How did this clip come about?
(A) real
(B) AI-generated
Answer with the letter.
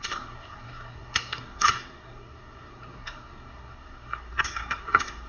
B